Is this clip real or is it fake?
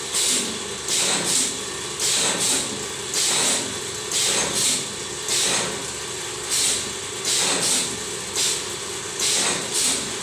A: real